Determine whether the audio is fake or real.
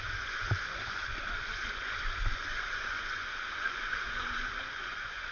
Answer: fake